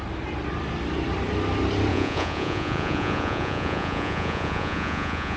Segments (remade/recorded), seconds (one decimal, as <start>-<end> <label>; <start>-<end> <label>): 0.0-1.9 recorded; 1.9-5.4 remade